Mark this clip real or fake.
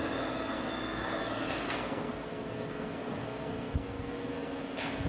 fake